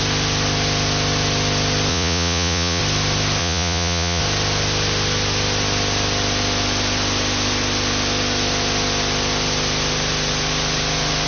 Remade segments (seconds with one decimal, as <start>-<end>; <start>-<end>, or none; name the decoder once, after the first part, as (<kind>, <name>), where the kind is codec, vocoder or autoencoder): 1.9-2.8 (vocoder, Vocos); 3.4-4.2